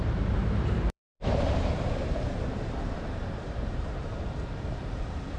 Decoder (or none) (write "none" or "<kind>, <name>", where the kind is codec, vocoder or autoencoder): vocoder, BigVGAN v2